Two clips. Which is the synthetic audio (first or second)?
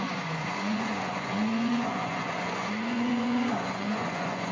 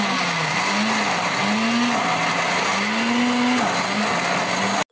first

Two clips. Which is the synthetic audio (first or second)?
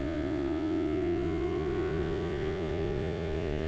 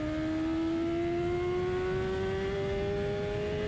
first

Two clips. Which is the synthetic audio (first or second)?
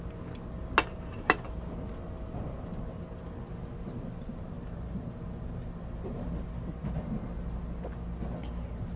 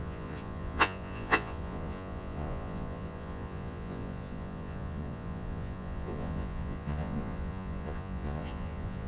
second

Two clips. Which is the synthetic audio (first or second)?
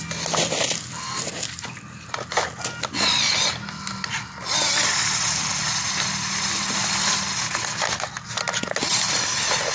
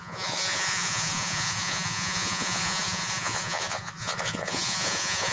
second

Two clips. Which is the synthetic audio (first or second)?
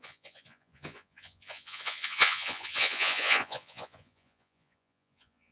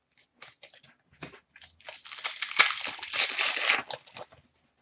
first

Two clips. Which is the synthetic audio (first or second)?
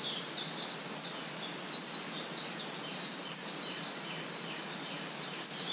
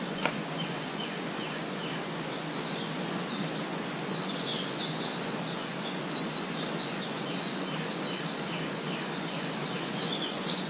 second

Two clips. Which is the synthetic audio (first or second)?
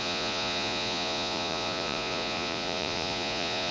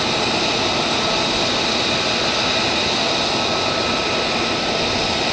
first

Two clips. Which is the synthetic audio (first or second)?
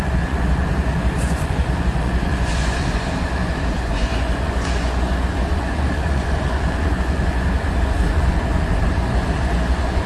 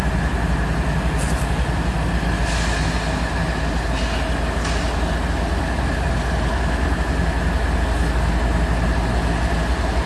first